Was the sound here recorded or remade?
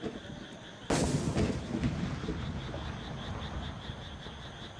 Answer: recorded